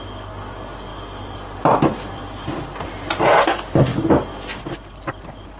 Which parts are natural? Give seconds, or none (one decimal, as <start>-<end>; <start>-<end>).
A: 0.0-0.9; 3.5-3.9; 4.7-5.6